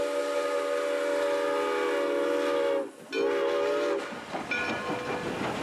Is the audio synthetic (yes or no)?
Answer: no